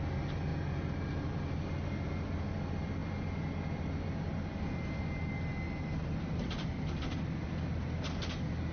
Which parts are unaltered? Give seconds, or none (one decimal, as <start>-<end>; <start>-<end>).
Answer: 0.0-8.7